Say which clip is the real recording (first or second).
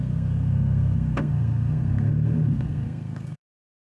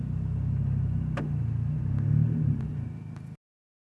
second